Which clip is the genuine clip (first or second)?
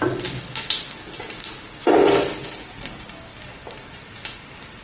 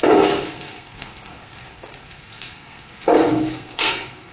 first